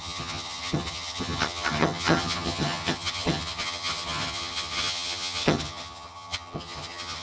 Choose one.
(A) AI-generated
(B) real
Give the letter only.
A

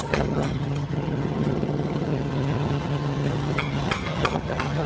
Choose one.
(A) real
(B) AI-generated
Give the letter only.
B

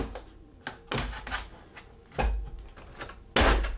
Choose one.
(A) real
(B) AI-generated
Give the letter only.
A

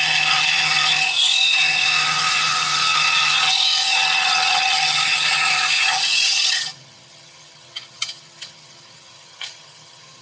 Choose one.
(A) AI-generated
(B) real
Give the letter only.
A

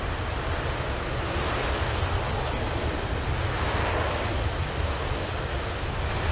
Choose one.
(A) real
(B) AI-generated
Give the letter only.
A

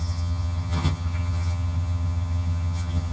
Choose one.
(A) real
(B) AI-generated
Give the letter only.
B